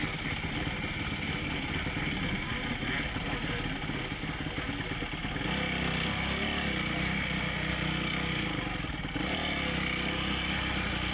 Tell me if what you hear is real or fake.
real